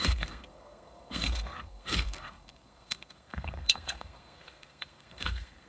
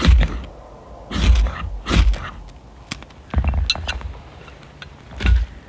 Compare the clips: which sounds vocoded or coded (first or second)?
first